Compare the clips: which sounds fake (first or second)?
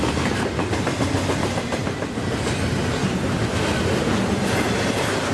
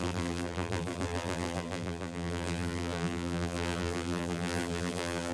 second